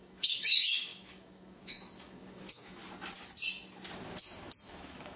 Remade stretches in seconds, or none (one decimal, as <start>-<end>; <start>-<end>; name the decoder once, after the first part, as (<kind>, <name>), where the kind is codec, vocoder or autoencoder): 0.0-2.8 (autoencoder, DAC-VAE); 4.2-5.2